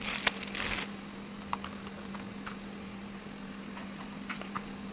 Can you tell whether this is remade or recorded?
recorded